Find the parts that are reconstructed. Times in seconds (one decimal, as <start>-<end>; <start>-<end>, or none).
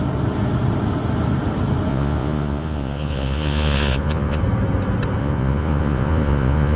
1.9-4.4; 5.2-6.8